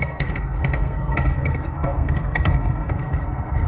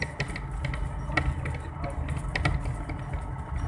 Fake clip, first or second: first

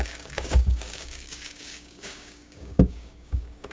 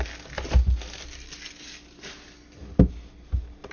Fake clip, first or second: first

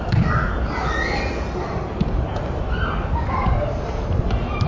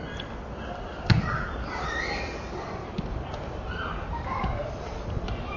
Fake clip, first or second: second